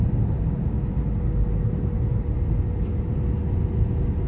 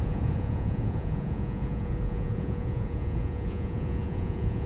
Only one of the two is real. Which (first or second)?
first